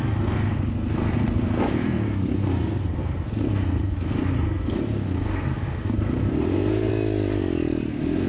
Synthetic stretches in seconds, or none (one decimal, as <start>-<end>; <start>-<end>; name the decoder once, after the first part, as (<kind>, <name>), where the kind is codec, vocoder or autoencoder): 0.0-6.9 (codec, SNAC); 7.9-8.3